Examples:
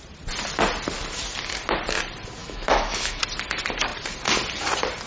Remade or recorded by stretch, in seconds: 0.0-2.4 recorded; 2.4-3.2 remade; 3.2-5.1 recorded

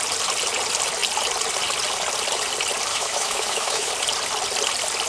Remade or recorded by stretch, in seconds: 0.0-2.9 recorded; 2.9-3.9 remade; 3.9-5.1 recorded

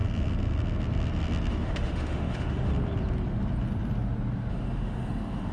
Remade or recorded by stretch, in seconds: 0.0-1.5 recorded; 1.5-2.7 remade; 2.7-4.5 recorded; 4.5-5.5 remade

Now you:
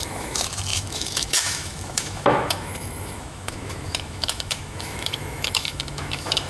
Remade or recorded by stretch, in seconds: 0.0-6.5 remade

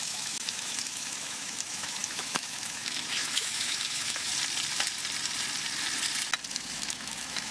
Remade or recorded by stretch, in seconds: 0.0-4.3 remade; 4.3-6.5 recorded; 6.5-7.5 remade